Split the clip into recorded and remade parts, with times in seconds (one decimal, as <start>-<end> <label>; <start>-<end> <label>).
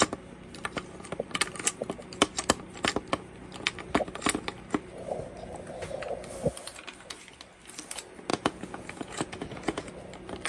0.0-8.3 recorded; 8.3-9.9 remade; 9.9-10.5 recorded